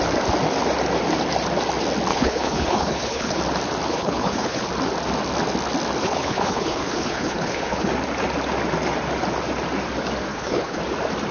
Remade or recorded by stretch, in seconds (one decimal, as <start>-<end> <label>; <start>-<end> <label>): 0.0-2.1 recorded; 2.1-3.4 remade; 3.4-3.9 recorded; 3.9-4.7 remade; 4.7-6.0 recorded; 6.0-7.9 remade; 7.9-10.3 recorded; 10.3-10.8 remade; 10.8-11.3 recorded